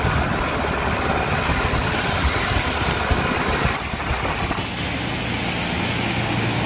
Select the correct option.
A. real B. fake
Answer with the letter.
A